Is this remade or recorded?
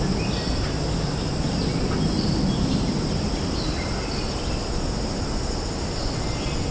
recorded